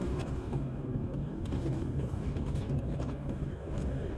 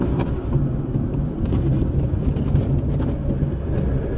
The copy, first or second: first